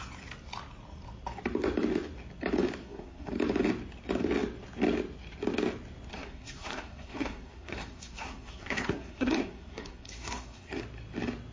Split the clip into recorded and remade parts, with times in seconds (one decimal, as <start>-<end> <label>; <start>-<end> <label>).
0.0-2.8 recorded; 2.8-3.3 remade; 3.3-6.1 recorded; 6.1-10.8 remade; 10.8-11.5 recorded